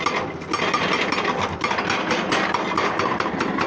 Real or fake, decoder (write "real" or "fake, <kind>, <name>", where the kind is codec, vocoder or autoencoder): real